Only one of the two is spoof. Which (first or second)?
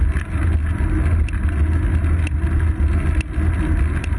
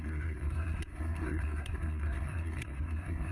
second